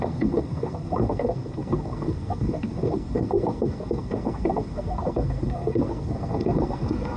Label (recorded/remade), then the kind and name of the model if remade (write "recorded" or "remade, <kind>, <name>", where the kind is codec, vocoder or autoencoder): remade, codec, SNAC